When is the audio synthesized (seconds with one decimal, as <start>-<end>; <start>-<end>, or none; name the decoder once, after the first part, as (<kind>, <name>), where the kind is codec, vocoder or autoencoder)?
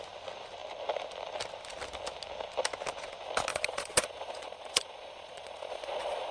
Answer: 3.5-6.3 (vocoder, Vocos)